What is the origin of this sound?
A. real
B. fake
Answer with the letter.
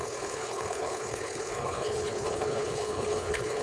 B